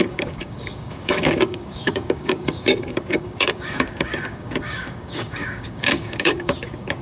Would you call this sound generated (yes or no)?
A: yes